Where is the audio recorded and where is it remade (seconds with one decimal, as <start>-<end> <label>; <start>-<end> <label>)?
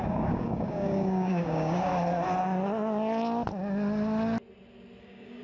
0.0-1.9 remade; 1.9-5.0 recorded; 5.0-5.4 remade